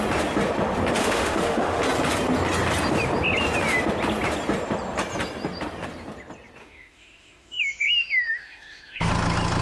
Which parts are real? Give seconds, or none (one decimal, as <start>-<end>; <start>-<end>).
0.0-1.0; 1.8-6.6; 9.1-9.6